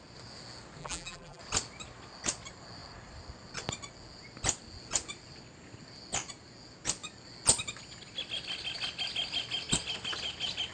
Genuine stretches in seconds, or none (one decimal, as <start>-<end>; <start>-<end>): 0.0-0.8; 1.4-10.7